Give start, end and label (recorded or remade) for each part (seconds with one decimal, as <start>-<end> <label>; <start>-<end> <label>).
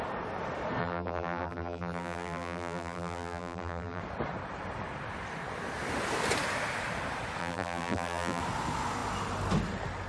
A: 0.0-0.8 recorded; 0.8-4.0 remade; 4.0-7.4 recorded; 7.4-8.4 remade; 8.4-10.1 recorded